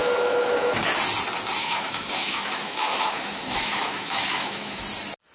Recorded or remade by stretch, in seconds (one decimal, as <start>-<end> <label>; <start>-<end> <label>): 0.0-0.7 remade; 0.7-1.6 recorded; 1.6-4.8 remade; 4.8-5.3 recorded